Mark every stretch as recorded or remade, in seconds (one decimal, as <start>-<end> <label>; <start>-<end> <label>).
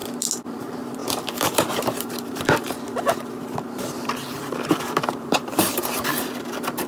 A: 0.0-0.5 recorded; 0.5-6.9 remade